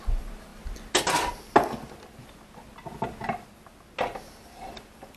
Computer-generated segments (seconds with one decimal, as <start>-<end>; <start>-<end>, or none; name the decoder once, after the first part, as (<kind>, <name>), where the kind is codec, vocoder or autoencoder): none